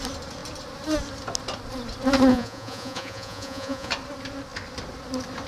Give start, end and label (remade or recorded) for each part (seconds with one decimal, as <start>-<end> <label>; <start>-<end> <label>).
0.0-2.3 recorded; 2.3-3.9 remade; 3.9-5.5 recorded